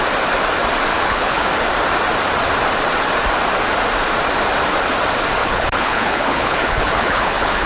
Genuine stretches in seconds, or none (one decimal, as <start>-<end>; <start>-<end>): 0.0-0.9; 1.5-5.4